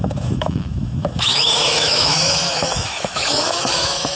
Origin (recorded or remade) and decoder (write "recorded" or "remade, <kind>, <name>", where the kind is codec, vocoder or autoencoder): remade, autoencoder, DAC-VAE